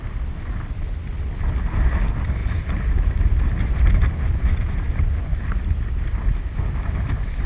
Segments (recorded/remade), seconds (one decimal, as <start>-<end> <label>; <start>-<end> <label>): 0.0-2.4 recorded; 2.4-5.9 remade; 5.9-7.5 recorded